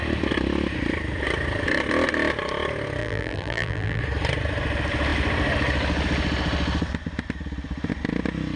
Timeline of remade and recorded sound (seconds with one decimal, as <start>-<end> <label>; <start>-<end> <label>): 0.0-3.0 recorded; 3.0-4.0 remade; 4.0-8.6 recorded